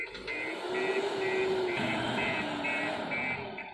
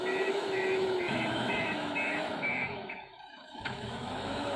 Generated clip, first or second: second